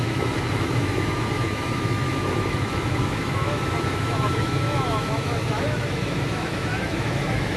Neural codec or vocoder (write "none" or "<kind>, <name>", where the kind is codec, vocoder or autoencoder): autoencoder, DAC-VAE